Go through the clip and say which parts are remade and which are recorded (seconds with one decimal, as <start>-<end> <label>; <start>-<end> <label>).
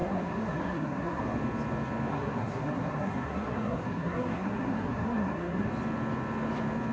0.0-1.2 remade; 1.2-2.1 recorded; 2.1-5.7 remade; 5.7-6.9 recorded